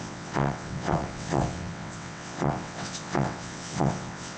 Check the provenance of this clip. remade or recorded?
remade